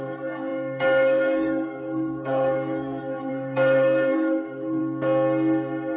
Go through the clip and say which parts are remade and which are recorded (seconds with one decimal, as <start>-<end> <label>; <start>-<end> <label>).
0.0-4.8 remade; 4.8-6.0 recorded